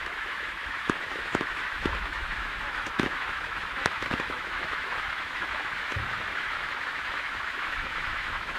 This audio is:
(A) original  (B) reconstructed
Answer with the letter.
B